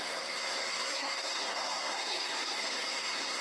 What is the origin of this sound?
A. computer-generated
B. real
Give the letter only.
A